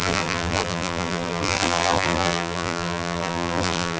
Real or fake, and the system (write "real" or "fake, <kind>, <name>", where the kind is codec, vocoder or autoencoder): fake, vocoder, BigVGAN v2